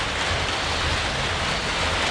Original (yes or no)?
yes